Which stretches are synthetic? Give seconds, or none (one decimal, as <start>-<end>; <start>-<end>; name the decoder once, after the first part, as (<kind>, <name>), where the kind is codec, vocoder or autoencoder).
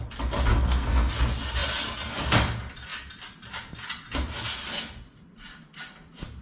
0.5-1.1 (codec, SNAC)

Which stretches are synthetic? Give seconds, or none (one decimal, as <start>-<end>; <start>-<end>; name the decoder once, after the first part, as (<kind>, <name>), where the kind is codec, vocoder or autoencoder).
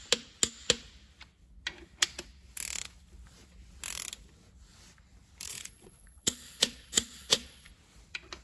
5.5-7.7 (vocoder, Vocos)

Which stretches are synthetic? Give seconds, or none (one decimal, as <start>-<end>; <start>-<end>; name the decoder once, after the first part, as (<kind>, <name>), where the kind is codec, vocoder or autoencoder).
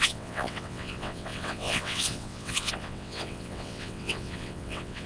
0.0-5.1 (vocoder, WaveNeXt)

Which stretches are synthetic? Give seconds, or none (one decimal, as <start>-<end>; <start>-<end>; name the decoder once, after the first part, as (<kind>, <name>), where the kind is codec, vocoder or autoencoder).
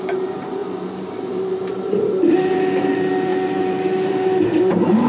0.0-5.1 (vocoder, BigVGAN v2)